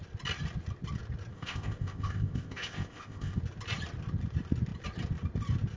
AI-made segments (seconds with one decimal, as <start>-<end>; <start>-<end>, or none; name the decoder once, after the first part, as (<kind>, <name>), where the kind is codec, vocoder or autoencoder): 1.3-3.4 (codec, ZipCodec)